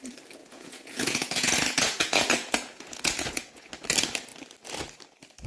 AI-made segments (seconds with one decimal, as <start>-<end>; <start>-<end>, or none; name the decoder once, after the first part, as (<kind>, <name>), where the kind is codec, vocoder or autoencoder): 0.4-3.7 (vocoder, Vocos)